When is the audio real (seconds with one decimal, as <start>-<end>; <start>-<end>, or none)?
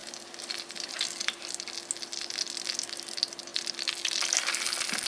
0.0-5.1